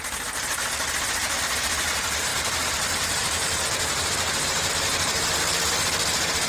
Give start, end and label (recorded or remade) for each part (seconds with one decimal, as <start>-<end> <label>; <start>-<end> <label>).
0.0-2.3 recorded; 2.3-4.7 remade; 4.7-6.5 recorded